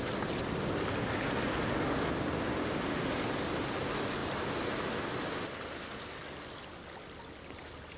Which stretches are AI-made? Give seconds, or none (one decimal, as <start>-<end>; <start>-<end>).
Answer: none

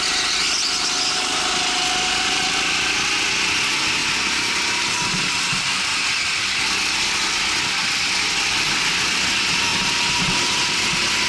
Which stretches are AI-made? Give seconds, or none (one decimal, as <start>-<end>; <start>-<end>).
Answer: none

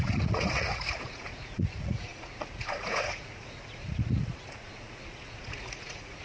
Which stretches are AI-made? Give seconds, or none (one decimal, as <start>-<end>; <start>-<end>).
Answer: 0.0-6.2

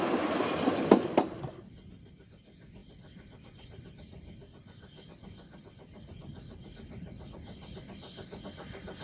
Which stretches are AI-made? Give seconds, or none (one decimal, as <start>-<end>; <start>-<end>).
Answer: none

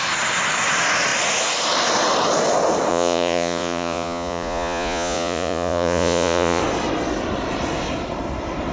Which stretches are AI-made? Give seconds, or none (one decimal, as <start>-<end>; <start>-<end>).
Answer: 2.9-6.6